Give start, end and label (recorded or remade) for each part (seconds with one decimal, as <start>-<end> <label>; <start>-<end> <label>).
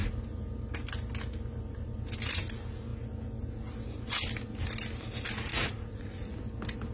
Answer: 0.0-5.5 recorded; 5.5-6.3 remade; 6.3-6.9 recorded